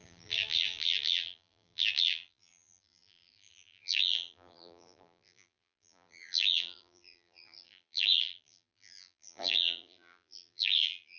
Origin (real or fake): fake